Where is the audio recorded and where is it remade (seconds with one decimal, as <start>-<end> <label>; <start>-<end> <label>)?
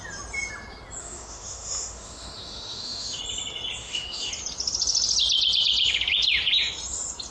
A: 0.0-1.0 recorded; 1.0-3.2 remade; 3.2-3.8 recorded; 3.8-4.3 remade; 4.3-7.3 recorded